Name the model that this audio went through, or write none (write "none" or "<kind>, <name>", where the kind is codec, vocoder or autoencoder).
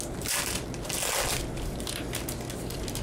none